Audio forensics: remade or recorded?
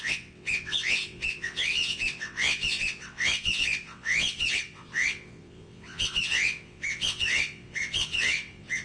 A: remade